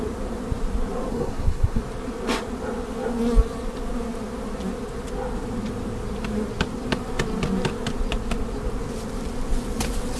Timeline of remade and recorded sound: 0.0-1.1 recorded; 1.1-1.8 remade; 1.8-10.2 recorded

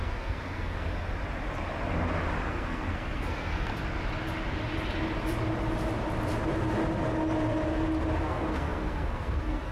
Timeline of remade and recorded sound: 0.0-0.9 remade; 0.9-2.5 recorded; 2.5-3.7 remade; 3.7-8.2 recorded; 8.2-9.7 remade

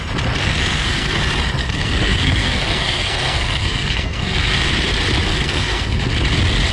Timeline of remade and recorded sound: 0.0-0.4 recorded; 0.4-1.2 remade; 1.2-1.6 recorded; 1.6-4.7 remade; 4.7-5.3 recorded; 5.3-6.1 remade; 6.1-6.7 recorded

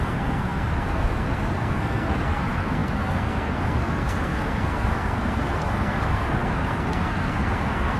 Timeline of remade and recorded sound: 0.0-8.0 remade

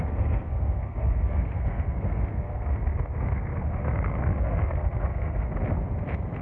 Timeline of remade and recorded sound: 0.0-5.5 remade; 5.5-6.4 recorded

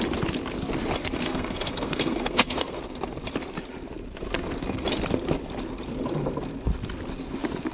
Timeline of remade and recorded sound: 0.0-1.2 recorded; 1.2-2.8 remade; 2.8-7.7 recorded

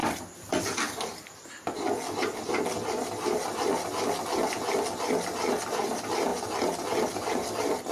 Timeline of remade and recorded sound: 0.0-7.9 recorded

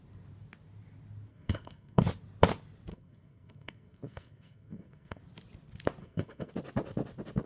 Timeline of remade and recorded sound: 0.0-1.3 recorded; 1.3-2.0 remade; 2.0-2.9 recorded; 2.9-5.2 remade; 5.2-6.0 recorded; 6.0-6.5 remade; 6.5-7.5 recorded